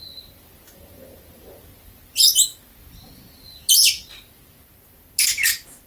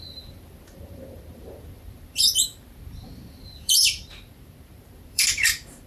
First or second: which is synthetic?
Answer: second